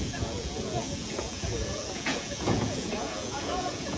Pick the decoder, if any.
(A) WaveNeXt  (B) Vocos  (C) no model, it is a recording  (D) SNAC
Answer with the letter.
B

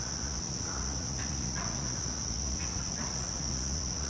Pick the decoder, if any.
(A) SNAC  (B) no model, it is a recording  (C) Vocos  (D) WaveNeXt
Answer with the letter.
C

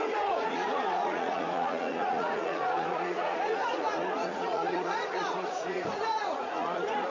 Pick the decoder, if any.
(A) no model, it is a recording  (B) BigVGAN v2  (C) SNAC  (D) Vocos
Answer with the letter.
D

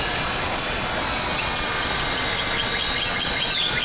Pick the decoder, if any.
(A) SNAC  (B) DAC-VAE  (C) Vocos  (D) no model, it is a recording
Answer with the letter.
C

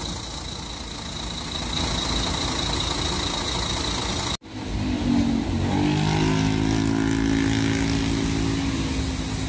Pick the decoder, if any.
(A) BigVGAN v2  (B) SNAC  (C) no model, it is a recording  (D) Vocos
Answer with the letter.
C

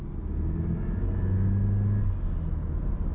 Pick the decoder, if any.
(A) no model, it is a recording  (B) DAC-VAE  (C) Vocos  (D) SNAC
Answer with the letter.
A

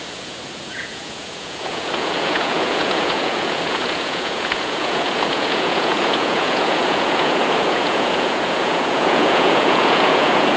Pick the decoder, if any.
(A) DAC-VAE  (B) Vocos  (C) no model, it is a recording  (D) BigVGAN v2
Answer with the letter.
B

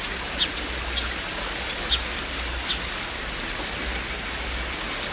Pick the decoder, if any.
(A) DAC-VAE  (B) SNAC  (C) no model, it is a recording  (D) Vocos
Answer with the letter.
C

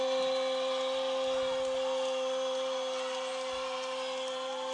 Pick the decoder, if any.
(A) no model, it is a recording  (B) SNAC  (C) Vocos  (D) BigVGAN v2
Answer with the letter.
A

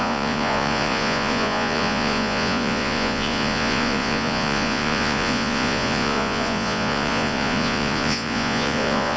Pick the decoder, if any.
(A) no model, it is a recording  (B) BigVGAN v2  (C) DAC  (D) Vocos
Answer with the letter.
D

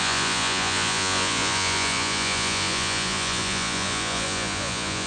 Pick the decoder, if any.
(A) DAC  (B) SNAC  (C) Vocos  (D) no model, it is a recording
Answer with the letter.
C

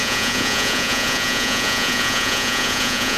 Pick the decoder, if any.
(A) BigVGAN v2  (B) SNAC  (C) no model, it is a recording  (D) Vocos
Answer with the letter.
D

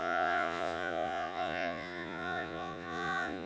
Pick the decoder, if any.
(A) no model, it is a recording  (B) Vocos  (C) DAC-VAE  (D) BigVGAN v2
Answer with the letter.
B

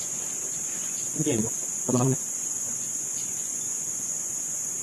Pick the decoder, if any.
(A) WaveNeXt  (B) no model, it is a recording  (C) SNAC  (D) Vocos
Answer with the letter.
D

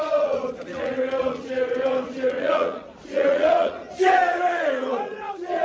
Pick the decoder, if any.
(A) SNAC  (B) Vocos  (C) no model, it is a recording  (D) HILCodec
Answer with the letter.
B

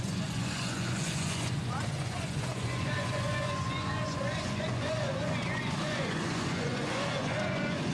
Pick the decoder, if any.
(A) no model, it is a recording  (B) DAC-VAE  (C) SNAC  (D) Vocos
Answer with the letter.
D